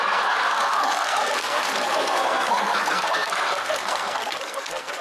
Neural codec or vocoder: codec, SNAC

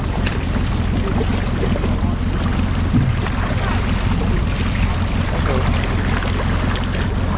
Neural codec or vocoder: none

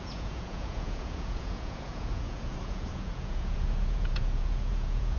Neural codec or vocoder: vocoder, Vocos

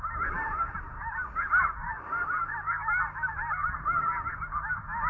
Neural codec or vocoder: none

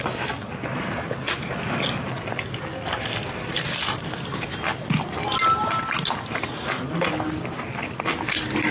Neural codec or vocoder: none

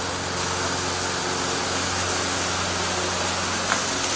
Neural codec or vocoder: none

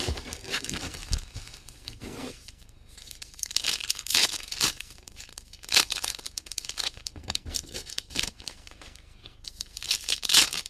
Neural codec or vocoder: codec, SNAC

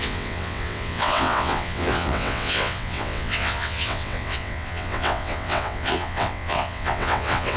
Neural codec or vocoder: vocoder, WaveNeXt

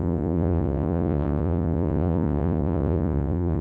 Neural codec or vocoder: vocoder, Vocos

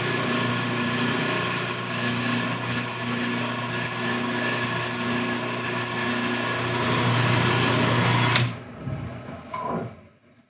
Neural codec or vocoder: none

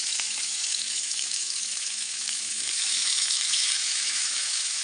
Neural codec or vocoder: autoencoder, DAC-VAE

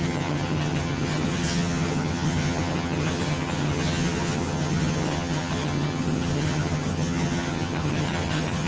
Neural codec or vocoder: vocoder, HiFi-GAN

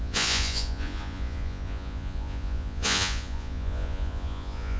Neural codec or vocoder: vocoder, Vocos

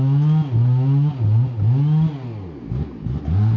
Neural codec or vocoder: none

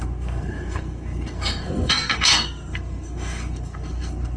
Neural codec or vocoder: codec, SNAC